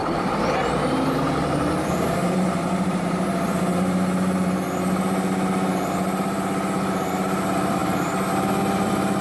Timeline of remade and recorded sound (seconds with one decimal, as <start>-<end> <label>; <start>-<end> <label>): 0.0-9.2 remade